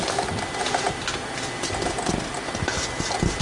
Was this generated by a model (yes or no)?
no